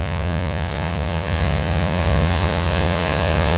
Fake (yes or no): yes